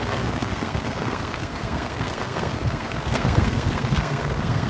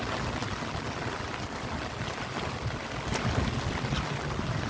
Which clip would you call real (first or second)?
second